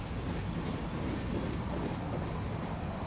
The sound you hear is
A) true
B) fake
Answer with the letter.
A